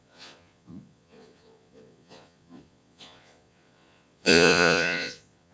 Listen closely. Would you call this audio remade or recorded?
remade